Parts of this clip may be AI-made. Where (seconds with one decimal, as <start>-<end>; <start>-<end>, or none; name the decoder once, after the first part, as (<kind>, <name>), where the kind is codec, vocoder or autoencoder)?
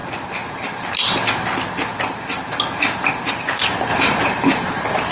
3.1-5.1 (vocoder, BigVGAN v2)